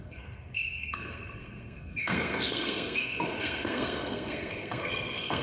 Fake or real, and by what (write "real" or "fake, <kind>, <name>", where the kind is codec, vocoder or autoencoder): fake, codec, SNAC